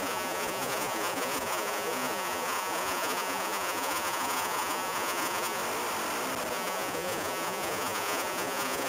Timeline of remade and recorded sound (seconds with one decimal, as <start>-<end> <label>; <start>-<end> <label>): 0.0-5.6 remade; 5.6-6.5 recorded; 6.5-8.9 remade